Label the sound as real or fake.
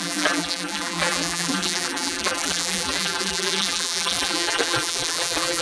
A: fake